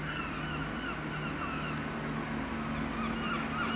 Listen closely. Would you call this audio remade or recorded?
recorded